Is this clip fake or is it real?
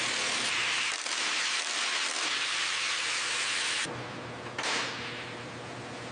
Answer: real